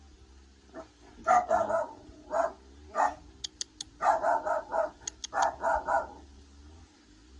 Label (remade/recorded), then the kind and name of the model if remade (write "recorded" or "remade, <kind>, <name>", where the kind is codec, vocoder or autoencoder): recorded